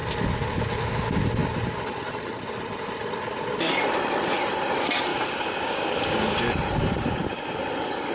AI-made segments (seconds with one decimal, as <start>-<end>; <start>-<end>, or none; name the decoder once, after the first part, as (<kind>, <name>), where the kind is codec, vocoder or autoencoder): 5.1-6.4 (codec, DAC)